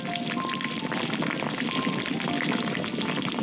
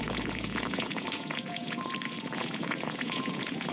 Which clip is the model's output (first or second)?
second